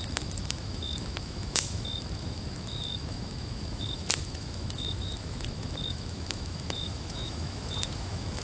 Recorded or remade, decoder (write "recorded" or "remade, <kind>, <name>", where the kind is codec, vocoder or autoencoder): remade, autoencoder, DAC-VAE